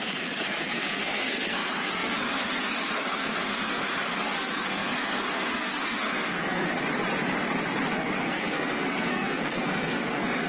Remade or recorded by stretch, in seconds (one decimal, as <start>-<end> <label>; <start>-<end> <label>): 0.0-6.7 remade; 6.7-7.9 recorded; 7.9-10.5 remade